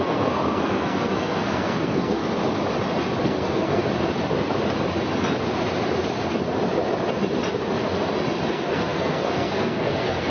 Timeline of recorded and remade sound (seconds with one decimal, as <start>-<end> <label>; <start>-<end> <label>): 0.0-2.2 remade; 2.2-3.2 recorded; 3.2-3.8 remade; 3.8-8.5 recorded; 8.5-10.3 remade